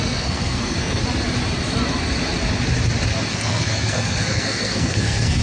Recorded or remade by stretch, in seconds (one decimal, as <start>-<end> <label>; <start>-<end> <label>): 0.0-1.0 remade; 1.0-3.3 recorded; 3.3-5.4 remade

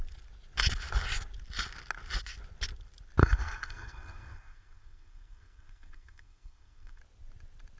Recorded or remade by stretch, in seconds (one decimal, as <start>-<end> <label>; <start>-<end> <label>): 0.0-3.2 recorded; 3.2-7.0 remade; 7.0-7.8 recorded

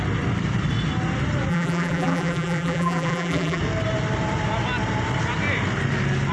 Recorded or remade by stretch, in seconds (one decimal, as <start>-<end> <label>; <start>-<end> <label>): 0.0-1.5 recorded; 1.5-3.6 remade; 3.6-6.3 recorded

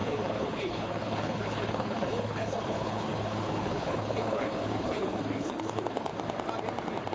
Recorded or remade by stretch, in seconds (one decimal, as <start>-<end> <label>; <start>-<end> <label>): 0.0-6.1 remade; 6.1-7.1 recorded

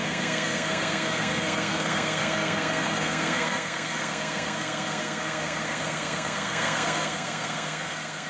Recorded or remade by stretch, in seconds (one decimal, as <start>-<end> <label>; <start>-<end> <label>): 0.0-8.3 remade

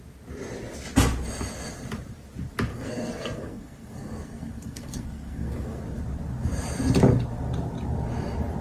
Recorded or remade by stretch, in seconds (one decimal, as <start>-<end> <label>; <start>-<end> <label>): 0.0-2.7 recorded; 2.7-5.8 remade; 5.8-8.6 recorded